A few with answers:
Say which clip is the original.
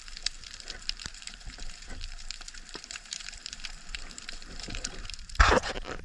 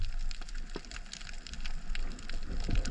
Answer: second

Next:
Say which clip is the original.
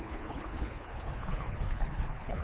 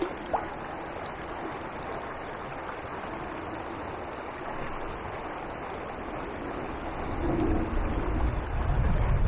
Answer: second